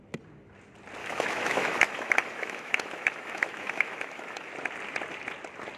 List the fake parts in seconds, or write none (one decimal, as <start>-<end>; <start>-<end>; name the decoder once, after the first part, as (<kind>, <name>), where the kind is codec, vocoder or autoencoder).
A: 1.0-4.5 (autoencoder, DAC-VAE)